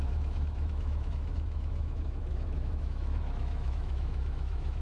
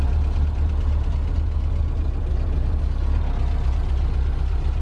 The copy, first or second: first